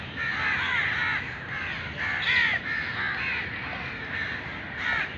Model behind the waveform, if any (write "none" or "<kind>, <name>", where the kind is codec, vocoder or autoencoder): none